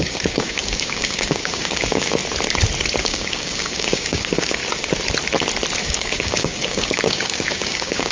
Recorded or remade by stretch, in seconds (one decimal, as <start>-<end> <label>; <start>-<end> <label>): 0.0-2.2 remade; 2.2-3.0 recorded; 3.0-4.6 remade; 4.6-5.8 recorded; 5.8-8.1 remade